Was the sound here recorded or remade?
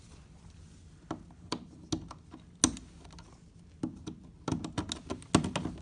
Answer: recorded